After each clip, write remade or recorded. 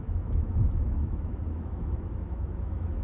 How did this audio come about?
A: remade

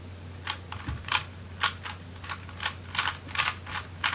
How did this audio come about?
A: recorded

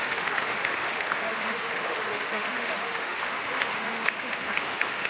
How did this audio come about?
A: remade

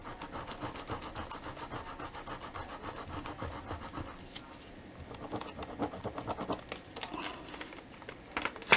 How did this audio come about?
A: recorded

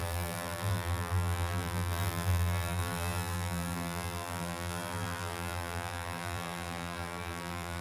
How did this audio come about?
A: remade